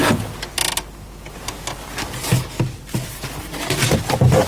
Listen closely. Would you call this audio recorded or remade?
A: recorded